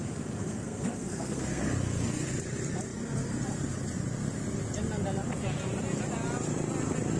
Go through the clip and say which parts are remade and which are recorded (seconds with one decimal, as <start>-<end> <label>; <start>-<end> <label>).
0.0-0.4 recorded; 0.4-1.6 remade; 1.6-7.2 recorded